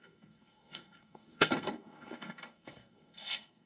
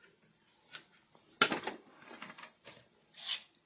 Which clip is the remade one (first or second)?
first